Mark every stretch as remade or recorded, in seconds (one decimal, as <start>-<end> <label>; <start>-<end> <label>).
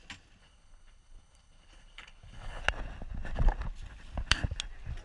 0.0-0.4 recorded; 0.4-2.6 remade; 2.6-5.0 recorded